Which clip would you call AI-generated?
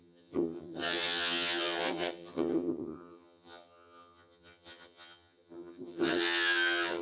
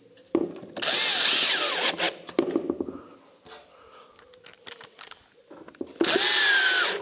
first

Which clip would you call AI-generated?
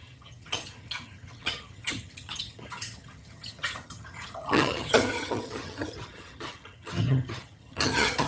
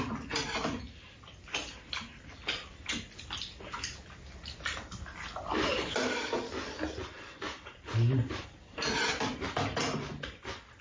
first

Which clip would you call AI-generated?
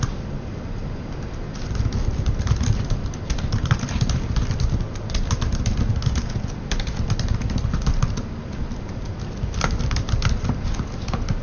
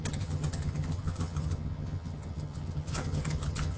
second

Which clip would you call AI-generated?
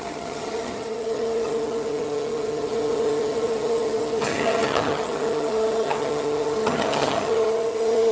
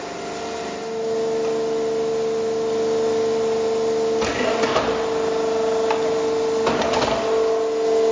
first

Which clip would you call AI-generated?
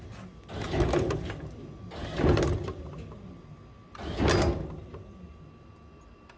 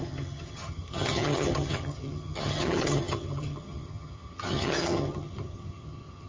second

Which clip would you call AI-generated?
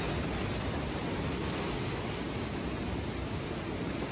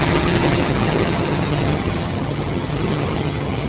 second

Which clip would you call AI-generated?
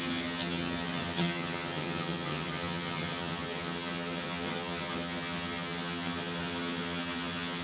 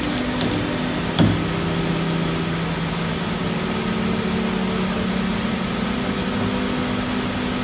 first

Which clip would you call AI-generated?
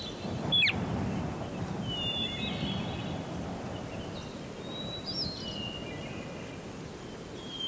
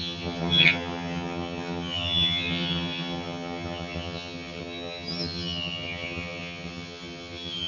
second